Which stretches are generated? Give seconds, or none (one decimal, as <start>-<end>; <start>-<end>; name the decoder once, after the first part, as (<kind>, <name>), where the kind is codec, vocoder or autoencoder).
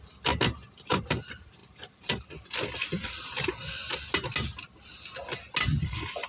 none